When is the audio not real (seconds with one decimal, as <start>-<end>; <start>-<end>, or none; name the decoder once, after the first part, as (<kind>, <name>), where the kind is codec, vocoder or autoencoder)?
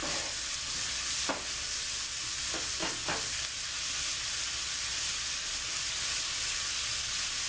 none